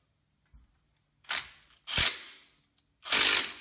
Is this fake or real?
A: real